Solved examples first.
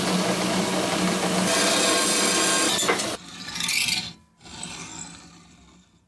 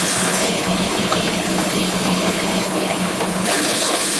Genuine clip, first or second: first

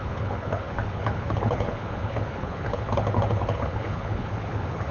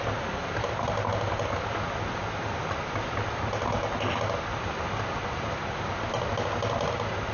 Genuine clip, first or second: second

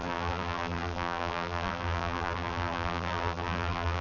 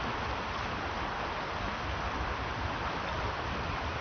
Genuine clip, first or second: second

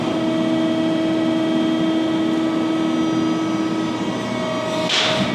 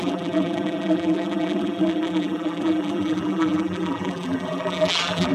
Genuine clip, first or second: first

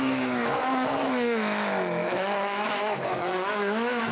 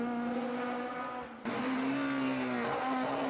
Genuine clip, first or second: second